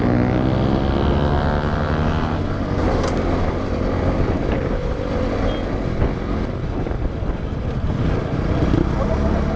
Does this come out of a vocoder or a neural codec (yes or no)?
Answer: no